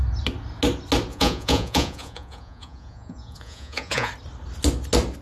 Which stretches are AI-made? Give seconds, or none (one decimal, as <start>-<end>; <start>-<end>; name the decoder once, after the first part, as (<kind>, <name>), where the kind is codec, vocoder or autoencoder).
1.1-4.1 (vocoder, Vocos)